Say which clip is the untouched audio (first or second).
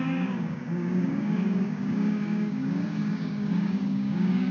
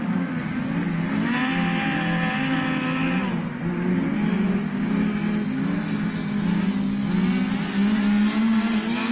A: second